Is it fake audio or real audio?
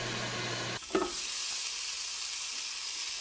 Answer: real